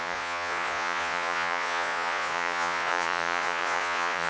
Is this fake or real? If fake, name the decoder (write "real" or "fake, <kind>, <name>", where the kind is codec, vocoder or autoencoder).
fake, vocoder, Vocos